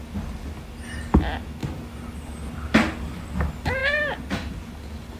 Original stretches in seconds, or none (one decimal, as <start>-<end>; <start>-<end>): 0.0-5.2